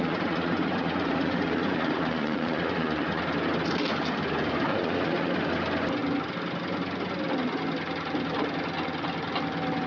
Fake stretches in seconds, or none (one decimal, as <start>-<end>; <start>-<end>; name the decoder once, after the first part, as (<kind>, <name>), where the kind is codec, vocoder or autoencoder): 0.0-3.2 (vocoder, Vocos); 4.7-5.3